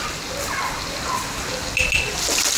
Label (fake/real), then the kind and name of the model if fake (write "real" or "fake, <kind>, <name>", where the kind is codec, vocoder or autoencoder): real